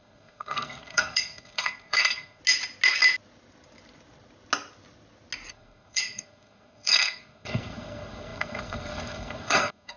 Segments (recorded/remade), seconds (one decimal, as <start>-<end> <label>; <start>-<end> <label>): 0.0-2.4 remade; 2.4-5.5 recorded; 5.5-10.0 remade